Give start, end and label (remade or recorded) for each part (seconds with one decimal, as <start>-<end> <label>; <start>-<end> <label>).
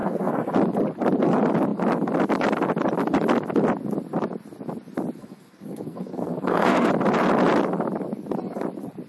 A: 0.0-0.5 remade; 0.5-5.2 recorded; 5.2-6.9 remade; 6.9-9.1 recorded